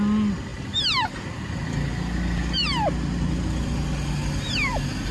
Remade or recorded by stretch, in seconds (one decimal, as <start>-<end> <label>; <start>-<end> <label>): 0.0-5.1 recorded